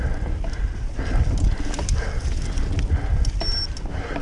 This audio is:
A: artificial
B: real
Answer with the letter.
B